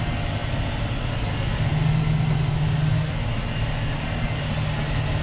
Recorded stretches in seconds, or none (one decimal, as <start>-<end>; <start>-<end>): 0.0-5.2